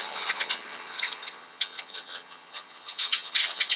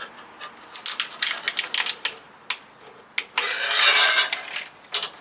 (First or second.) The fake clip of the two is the first